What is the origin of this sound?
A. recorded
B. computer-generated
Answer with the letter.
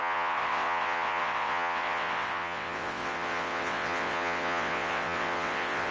B